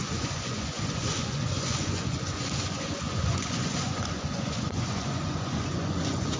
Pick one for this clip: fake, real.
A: fake